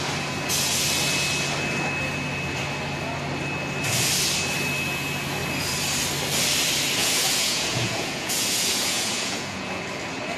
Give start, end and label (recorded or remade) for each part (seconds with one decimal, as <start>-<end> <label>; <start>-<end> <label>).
0.0-7.0 recorded; 7.0-9.8 remade; 9.8-10.4 recorded